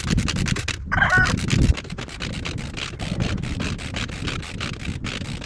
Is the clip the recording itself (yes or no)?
yes